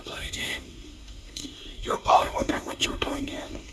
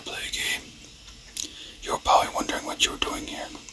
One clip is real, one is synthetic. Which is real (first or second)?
second